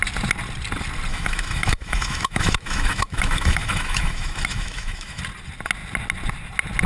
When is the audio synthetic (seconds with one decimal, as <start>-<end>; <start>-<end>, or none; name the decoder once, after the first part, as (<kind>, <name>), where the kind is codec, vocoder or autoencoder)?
1.1-5.2 (autoencoder, DAC-VAE)